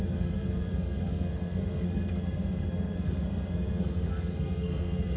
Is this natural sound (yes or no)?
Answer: no